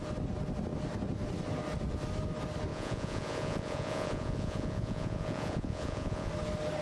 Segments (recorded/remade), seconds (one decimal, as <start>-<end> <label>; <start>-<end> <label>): 0.0-2.7 recorded; 2.7-6.3 remade; 6.3-6.8 recorded